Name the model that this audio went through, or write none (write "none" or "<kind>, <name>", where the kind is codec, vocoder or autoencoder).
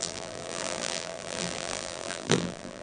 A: vocoder, BigVGAN v2